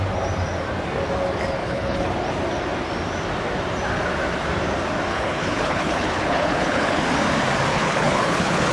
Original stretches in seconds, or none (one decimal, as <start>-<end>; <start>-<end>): 0.0-1.6; 2.1-5.1; 7.0-7.7